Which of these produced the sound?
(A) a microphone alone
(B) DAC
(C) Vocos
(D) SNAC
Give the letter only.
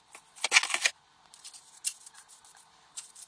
A